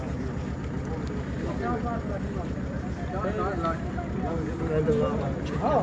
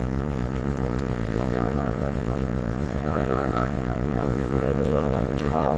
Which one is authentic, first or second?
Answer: first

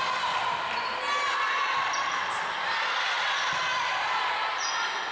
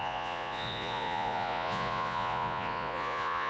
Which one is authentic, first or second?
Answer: first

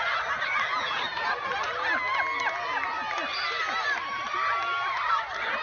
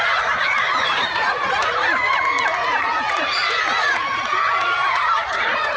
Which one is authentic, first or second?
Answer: first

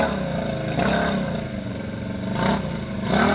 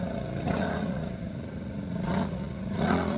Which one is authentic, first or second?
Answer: first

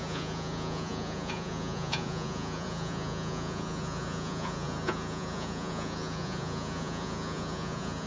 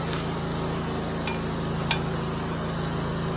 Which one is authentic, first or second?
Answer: second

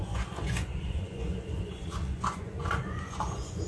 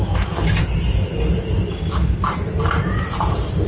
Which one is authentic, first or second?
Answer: second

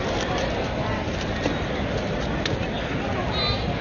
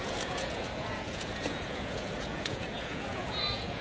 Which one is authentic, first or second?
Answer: first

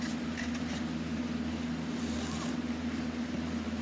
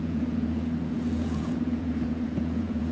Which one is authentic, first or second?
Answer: first